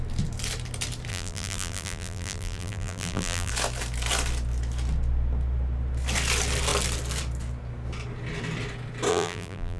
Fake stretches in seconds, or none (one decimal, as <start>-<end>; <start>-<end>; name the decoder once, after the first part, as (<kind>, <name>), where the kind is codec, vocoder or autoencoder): 1.1-3.5 (vocoder, BigVGAN v2); 9.1-9.8